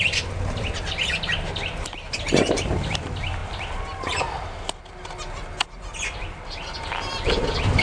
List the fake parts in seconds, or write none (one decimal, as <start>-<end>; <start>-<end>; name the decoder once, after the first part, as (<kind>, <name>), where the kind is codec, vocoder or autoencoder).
3.4-4.8 (vocoder, BigVGAN v2)